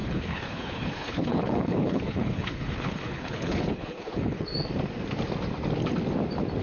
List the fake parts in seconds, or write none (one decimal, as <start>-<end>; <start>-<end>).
0.0-4.5